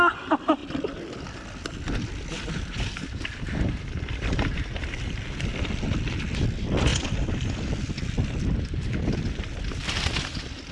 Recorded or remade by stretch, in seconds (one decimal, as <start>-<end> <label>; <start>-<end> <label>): 0.0-0.6 recorded; 0.6-5.7 remade; 5.7-6.9 recorded; 6.9-7.7 remade; 7.7-10.7 recorded